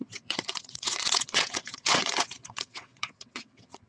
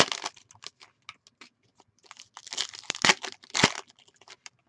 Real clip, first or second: second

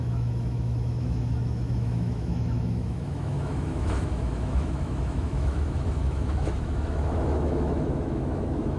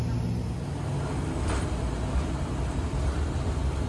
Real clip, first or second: second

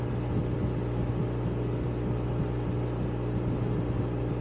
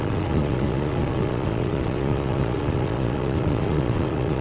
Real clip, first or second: first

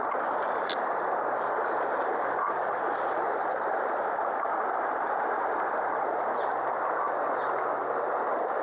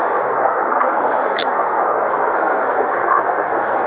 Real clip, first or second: first